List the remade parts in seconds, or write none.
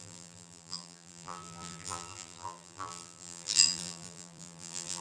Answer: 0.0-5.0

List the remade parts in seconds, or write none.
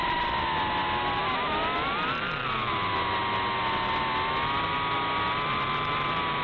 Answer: none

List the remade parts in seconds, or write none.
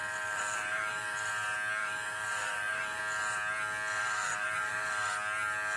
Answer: 0.0-1.3; 1.8-3.0; 4.0-5.1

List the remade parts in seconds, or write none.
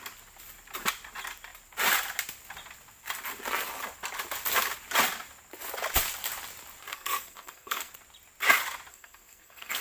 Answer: 6.9-7.9; 8.9-9.8